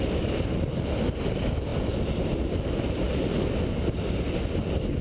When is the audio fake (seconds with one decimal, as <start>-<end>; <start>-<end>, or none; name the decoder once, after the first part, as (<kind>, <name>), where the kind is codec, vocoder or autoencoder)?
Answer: none